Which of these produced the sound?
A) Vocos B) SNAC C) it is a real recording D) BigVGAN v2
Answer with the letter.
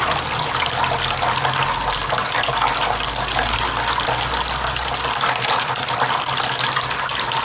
C